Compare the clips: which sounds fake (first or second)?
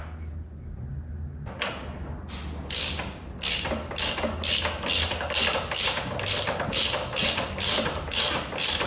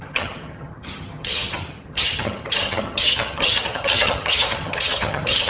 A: second